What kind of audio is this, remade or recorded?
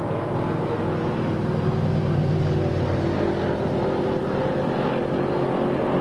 recorded